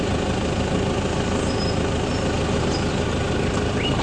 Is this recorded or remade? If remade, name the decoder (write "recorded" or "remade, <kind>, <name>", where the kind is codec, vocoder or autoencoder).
recorded